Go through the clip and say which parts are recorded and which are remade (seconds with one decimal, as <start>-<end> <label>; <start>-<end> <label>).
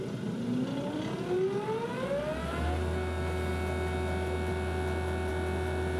0.0-6.0 recorded